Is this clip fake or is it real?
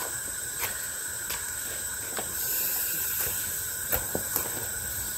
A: fake